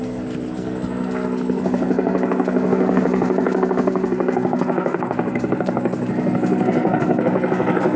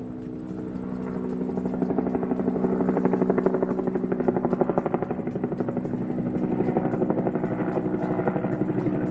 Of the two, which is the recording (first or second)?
second